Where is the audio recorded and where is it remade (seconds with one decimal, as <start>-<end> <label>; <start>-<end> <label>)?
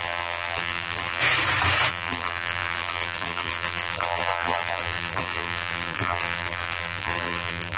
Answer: 0.0-1.2 remade; 1.2-1.9 recorded; 1.9-7.8 remade